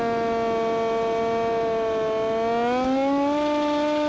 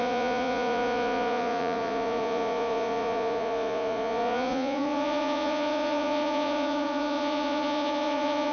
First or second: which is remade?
second